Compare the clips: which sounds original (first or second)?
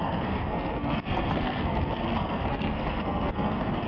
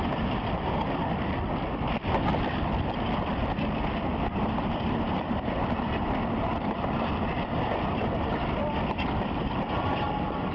second